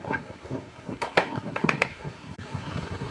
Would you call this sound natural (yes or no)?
no